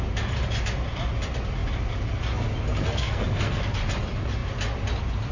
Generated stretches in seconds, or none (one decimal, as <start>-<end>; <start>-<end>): 2.8-3.6